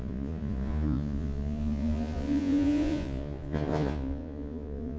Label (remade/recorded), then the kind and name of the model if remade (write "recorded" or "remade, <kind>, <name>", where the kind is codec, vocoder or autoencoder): remade, vocoder, Vocos